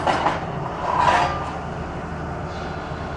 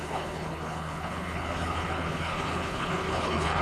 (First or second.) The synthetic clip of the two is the second